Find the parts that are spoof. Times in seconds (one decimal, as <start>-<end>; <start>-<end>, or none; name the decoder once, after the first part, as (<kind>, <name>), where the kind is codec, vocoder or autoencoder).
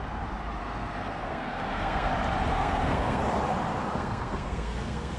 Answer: 0.6-2.1 (codec, SNAC); 2.5-3.2; 3.9-5.2